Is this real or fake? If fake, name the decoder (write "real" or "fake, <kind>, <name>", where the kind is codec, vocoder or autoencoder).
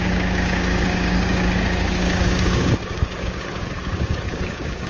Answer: fake, codec, DAC